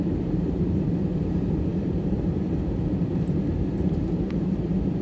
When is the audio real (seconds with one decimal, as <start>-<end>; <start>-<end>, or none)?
none